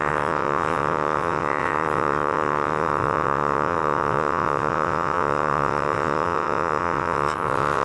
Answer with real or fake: fake